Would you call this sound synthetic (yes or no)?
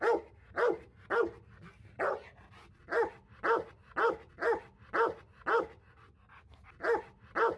no